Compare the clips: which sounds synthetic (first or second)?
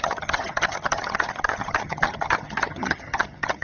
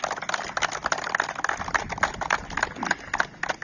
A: first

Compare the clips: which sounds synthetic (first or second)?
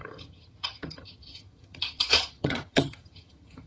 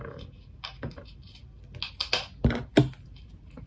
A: first